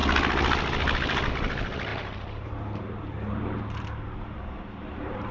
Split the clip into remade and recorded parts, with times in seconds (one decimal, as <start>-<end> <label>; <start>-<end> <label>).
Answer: 0.0-1.9 recorded; 1.9-5.3 remade